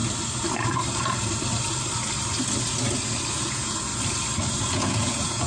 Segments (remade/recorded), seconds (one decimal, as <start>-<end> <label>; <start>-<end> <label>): 0.0-3.3 recorded; 3.3-3.9 remade; 3.9-4.7 recorded; 4.7-5.5 remade